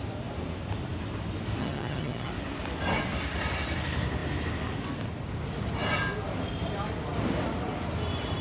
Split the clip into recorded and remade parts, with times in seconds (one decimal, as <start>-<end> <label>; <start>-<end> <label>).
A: 0.0-1.6 recorded; 1.6-2.3 remade; 2.3-8.4 recorded